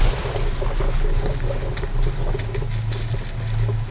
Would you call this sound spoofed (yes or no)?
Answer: no